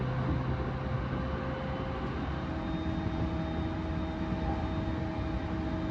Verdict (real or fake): real